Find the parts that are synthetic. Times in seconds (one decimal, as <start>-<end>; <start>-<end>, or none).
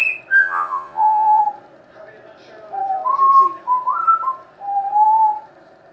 0.4-1.4